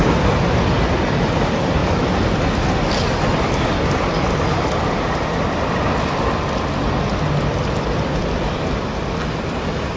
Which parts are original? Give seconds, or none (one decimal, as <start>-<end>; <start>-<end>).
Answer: 0.0-10.0